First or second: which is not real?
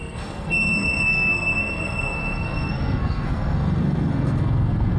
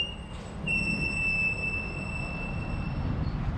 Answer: first